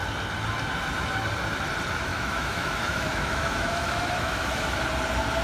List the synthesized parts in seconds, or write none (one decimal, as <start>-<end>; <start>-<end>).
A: 2.1-4.8